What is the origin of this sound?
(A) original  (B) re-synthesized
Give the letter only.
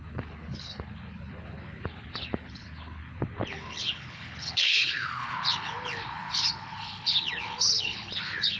B